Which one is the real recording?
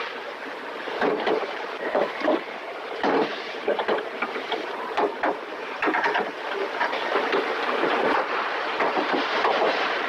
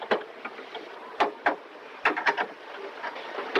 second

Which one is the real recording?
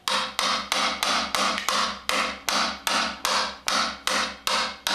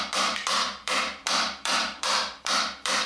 first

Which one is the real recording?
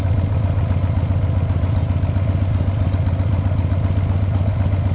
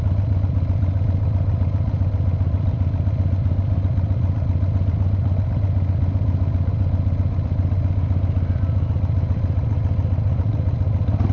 first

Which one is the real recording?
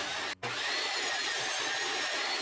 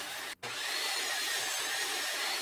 first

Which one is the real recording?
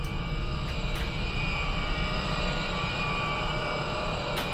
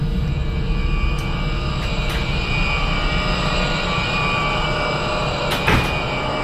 second